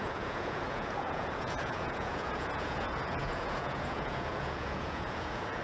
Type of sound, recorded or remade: remade